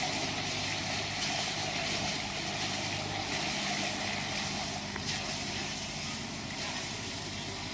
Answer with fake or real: real